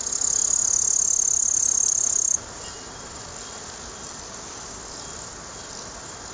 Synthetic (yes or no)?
no